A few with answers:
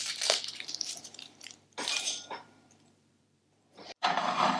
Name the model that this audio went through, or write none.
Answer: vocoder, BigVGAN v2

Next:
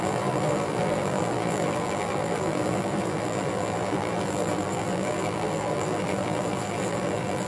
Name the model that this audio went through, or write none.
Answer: vocoder, BigVGAN v2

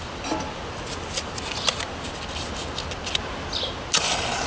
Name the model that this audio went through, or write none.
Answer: none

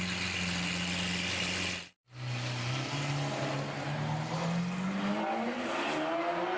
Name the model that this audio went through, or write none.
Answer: none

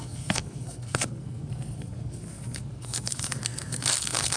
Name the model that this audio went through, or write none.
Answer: codec, SNAC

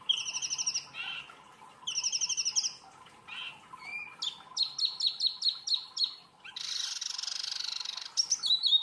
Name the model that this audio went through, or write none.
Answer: none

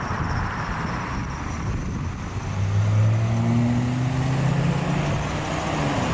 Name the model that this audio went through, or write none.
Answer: none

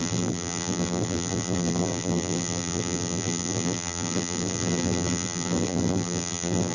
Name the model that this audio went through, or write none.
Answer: vocoder, BigVGAN v2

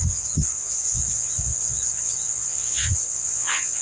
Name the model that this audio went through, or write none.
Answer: vocoder, WaveNeXt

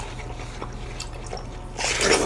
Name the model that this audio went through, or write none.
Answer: none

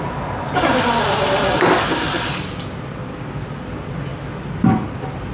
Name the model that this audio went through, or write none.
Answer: none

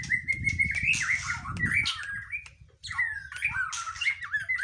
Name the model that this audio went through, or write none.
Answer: none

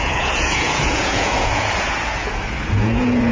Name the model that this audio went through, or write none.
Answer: vocoder, Vocos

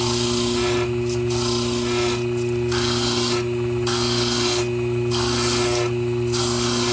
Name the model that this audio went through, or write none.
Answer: none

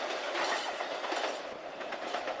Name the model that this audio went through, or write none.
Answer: none